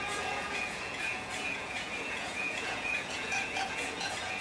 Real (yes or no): no